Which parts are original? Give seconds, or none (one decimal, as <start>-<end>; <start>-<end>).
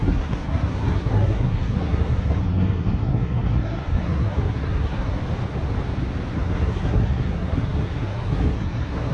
5.2-6.3